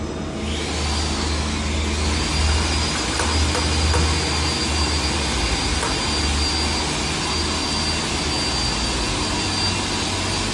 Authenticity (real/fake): real